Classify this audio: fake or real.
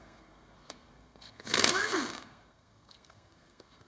fake